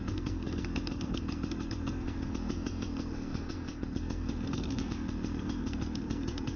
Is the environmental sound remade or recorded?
remade